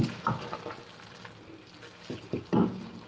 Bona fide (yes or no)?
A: yes